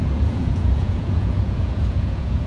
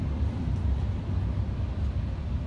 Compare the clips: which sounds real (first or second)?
second